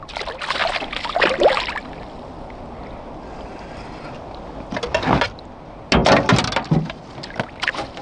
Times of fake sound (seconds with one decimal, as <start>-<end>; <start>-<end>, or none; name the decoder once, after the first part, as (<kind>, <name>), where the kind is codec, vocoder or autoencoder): none